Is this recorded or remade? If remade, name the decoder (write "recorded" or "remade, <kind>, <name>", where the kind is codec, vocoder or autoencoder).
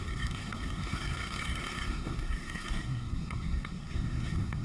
remade, codec, SNAC